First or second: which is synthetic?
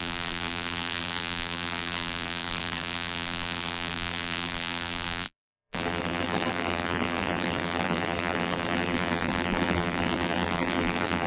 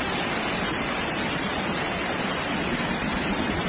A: first